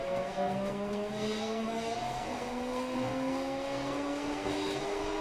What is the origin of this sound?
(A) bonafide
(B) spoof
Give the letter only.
B